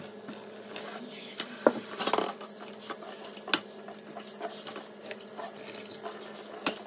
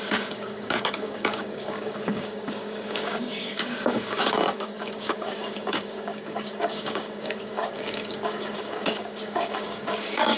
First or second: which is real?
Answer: first